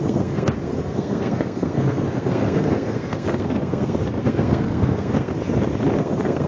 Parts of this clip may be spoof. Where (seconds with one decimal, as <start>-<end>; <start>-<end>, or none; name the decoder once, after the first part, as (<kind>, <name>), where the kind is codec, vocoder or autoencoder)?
0.0-5.3 (codec, SNAC); 6.0-6.5